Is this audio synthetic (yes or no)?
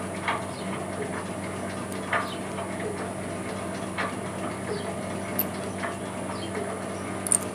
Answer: no